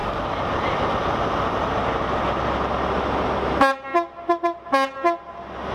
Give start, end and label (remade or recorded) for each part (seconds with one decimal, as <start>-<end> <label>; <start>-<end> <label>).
0.0-5.7 recorded